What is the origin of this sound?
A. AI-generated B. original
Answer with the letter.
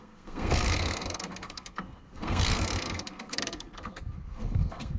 A